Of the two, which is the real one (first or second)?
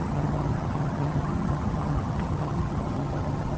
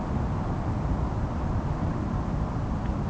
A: second